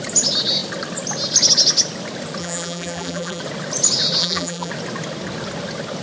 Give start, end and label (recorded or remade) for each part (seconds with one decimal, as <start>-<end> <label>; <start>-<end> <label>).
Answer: 0.0-2.4 recorded; 2.4-3.4 remade; 3.4-4.2 recorded; 4.2-4.7 remade; 4.7-6.0 recorded